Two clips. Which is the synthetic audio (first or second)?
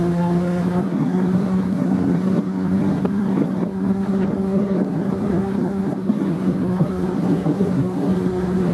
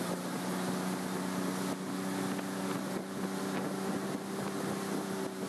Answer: first